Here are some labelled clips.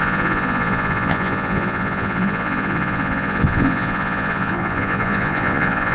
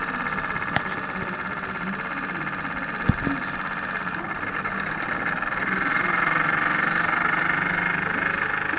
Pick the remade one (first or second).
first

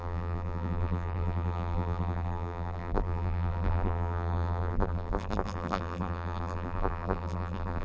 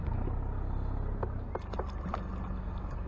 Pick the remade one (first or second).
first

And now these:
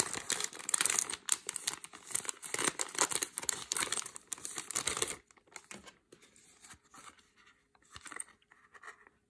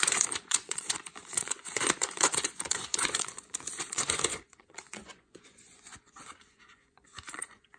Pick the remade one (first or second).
second